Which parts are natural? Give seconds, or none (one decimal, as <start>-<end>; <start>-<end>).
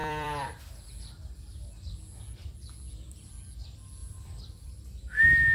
0.6-4.0; 4.7-5.5